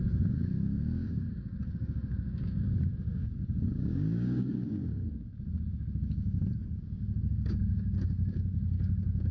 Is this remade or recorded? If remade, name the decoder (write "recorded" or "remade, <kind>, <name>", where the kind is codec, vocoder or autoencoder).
remade, codec, DAC